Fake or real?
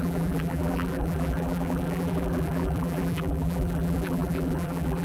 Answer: fake